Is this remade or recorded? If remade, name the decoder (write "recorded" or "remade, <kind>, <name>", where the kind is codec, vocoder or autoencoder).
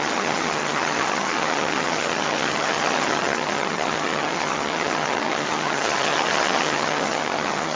remade, vocoder, HiFi-GAN